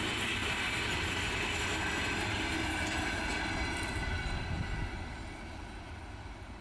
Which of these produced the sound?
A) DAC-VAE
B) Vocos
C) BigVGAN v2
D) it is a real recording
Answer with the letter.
D